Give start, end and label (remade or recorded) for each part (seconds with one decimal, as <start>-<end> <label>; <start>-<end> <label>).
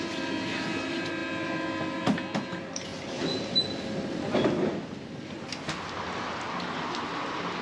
0.0-7.6 recorded